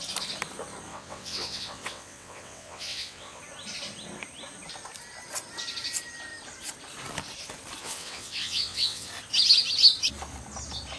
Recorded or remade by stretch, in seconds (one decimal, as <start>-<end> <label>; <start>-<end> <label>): 0.0-0.9 recorded; 0.9-3.4 remade; 3.4-7.8 recorded; 7.8-9.1 remade; 9.1-11.0 recorded